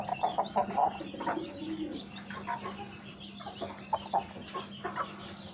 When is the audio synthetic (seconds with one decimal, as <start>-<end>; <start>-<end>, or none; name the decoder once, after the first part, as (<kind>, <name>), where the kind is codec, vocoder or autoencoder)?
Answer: none